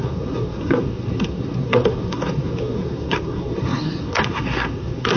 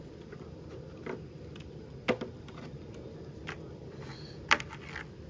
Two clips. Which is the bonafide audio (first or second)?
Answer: second